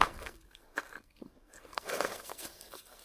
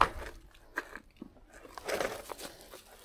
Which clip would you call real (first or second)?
second